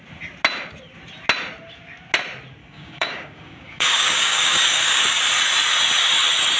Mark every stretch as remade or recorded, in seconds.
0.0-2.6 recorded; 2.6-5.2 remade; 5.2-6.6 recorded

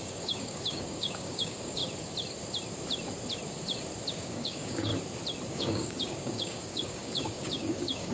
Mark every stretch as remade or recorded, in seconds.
0.0-1.8 remade; 1.8-4.1 recorded; 4.1-4.9 remade; 4.9-5.5 recorded; 5.5-8.1 remade